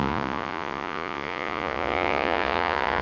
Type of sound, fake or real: fake